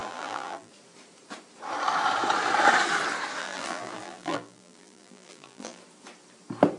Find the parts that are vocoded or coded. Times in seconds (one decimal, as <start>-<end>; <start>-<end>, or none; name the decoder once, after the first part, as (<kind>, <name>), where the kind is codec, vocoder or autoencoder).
0.0-0.7 (vocoder, BigVGAN v2); 3.4-5.8